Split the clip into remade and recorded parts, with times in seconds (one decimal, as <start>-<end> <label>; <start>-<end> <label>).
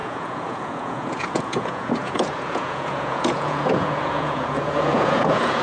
0.0-5.6 remade